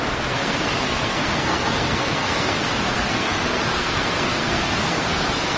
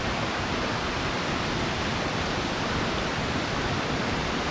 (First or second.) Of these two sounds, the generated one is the first